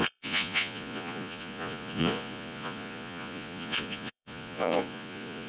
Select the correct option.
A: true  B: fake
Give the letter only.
B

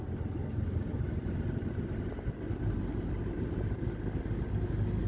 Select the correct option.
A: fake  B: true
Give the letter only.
B